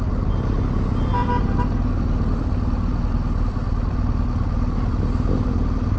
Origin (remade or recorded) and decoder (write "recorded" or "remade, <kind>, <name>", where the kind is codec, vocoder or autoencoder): recorded